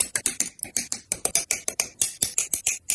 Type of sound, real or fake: fake